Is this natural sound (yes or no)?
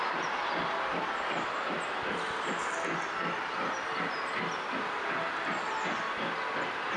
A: yes